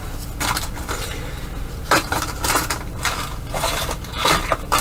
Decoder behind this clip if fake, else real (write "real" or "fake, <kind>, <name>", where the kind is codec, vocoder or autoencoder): fake, vocoder, BigVGAN v2